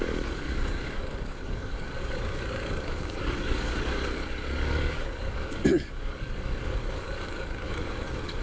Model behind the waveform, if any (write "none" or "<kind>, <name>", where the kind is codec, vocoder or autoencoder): codec, DAC